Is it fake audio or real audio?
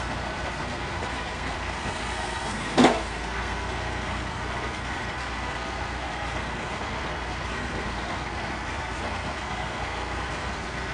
fake